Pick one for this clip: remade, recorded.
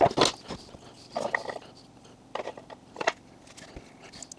recorded